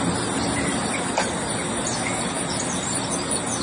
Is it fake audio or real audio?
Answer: real